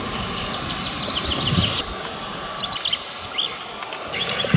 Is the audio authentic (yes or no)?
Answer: yes